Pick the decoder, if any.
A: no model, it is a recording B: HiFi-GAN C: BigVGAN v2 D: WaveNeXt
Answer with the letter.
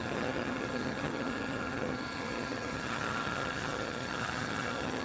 B